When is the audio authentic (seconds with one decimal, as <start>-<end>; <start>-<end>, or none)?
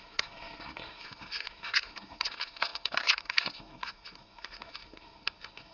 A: none